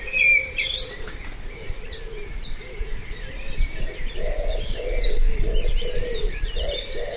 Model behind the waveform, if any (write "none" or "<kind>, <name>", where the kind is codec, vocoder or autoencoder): vocoder, BigVGAN v2